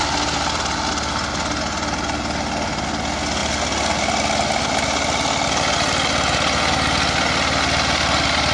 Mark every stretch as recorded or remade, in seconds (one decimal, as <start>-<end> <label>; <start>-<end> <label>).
0.0-8.5 recorded